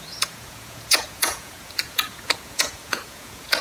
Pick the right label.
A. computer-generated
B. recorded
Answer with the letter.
A